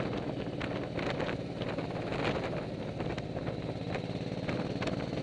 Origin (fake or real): real